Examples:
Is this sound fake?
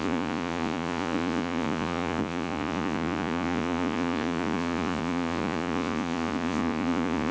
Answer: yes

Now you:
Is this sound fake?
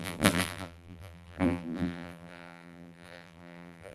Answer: yes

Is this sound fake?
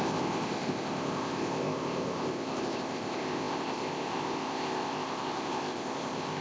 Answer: yes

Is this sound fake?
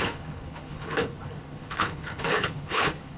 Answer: yes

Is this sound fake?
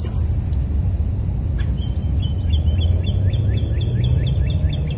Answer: no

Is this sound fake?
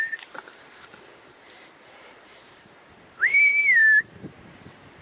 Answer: yes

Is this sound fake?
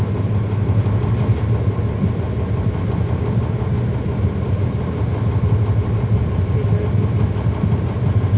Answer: no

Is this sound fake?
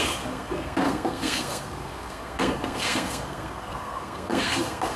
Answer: yes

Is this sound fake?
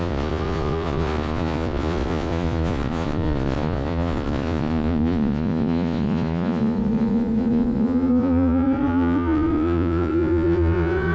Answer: yes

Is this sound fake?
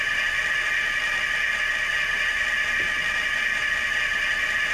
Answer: no